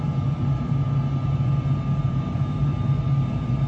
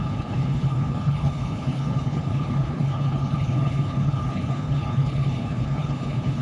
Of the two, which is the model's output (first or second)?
second